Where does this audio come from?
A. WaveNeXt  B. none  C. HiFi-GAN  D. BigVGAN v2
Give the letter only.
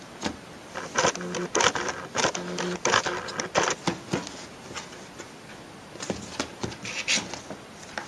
B